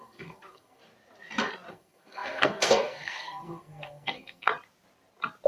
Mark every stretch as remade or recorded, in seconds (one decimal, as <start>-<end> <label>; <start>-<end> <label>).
0.0-0.8 remade; 0.8-1.7 recorded; 1.7-4.5 remade; 4.5-5.5 recorded